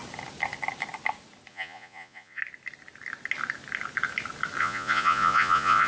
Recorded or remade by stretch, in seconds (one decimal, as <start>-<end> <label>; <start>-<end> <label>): 0.0-1.5 recorded; 1.5-2.4 remade; 2.4-4.6 recorded; 4.6-5.9 remade